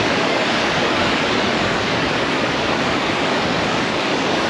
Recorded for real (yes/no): no